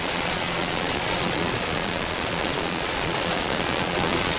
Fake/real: fake